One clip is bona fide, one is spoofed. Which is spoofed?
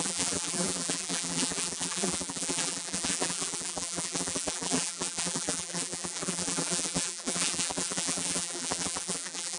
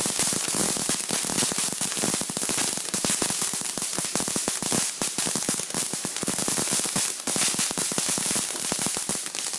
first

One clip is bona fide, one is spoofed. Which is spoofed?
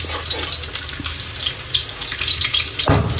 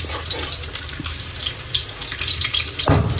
second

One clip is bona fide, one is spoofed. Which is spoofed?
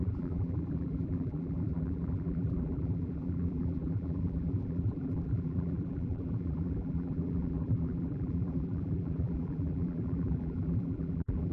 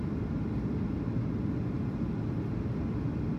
first